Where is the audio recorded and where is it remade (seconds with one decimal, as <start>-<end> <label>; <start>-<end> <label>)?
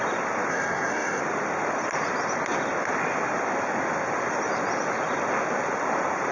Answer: 0.0-0.5 recorded; 0.5-1.2 remade; 1.2-6.3 recorded